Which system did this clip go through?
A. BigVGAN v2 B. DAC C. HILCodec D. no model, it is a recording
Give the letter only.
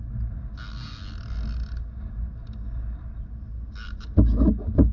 D